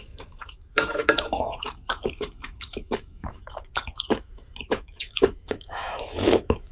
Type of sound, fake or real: fake